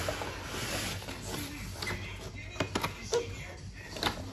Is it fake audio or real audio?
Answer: real